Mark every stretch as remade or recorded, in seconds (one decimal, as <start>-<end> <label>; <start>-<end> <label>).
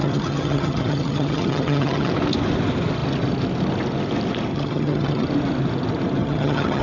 0.0-2.1 remade; 2.1-4.5 recorded; 4.5-5.3 remade; 5.3-6.2 recorded; 6.2-6.8 remade